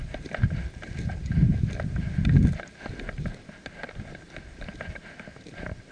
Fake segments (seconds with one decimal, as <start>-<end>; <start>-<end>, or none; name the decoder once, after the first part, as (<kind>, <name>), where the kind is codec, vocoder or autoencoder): none